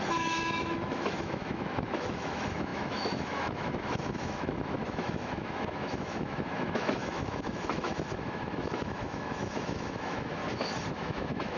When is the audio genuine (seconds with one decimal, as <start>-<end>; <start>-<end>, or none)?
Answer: 10.4-10.9